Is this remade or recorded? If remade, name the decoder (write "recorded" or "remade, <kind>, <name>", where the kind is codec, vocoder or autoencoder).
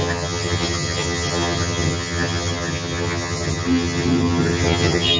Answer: remade, vocoder, HiFi-GAN